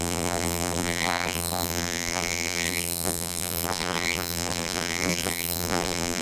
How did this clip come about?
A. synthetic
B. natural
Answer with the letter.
A